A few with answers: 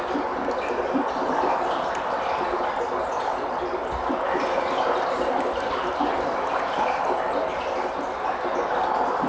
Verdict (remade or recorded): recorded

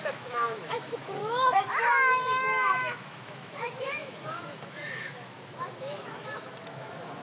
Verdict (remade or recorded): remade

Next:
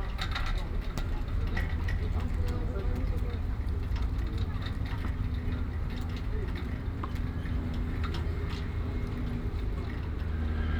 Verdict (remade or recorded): recorded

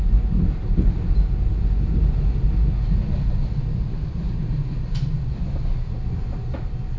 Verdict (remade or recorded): recorded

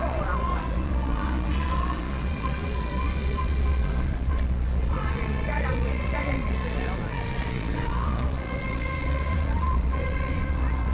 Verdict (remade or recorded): remade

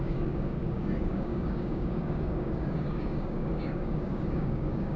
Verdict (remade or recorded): remade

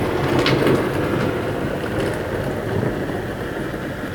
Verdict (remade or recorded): recorded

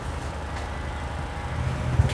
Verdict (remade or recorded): recorded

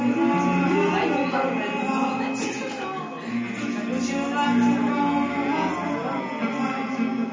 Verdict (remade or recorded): recorded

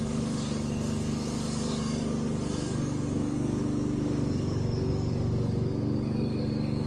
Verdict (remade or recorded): remade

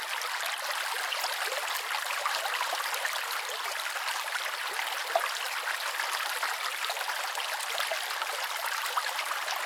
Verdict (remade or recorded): recorded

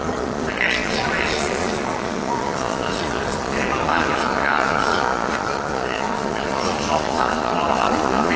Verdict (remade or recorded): remade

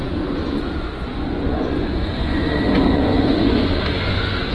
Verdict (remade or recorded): remade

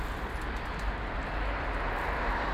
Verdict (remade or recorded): recorded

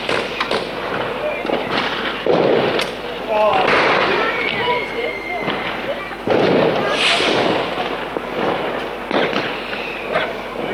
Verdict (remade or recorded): recorded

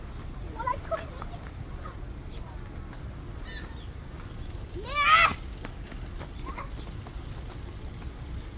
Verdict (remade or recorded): recorded